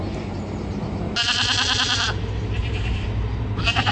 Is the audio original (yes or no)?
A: no